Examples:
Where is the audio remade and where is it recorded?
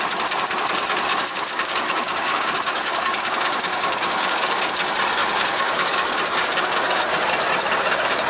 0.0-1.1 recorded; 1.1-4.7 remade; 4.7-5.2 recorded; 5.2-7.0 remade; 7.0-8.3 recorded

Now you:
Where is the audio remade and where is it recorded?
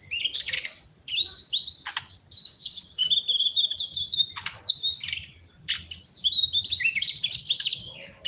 0.0-2.4 recorded; 2.4-3.0 remade; 3.0-8.3 recorded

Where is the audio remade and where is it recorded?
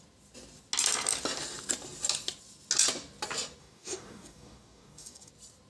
0.0-3.6 recorded; 3.6-5.3 remade; 5.3-5.7 recorded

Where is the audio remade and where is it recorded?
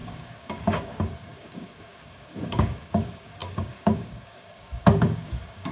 0.0-5.7 remade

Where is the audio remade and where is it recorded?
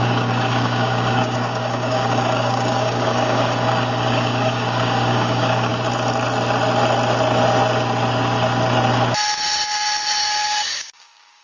0.0-5.7 remade; 5.7-10.2 recorded; 10.2-11.4 remade